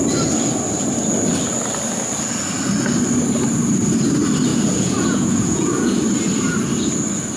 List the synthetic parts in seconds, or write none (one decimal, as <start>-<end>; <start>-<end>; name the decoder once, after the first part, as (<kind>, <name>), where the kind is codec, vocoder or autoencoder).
4.5-6.0 (vocoder, Vocos)